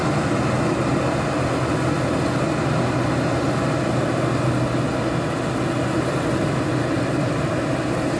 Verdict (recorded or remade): recorded